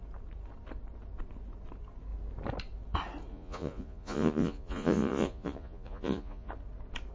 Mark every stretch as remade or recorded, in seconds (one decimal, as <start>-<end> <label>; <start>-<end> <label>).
0.0-3.3 recorded; 3.3-6.5 remade; 6.5-7.1 recorded